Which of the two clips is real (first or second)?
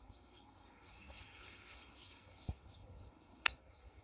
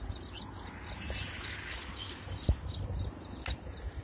second